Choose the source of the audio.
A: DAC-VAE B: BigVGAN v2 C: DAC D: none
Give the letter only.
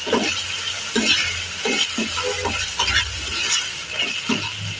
D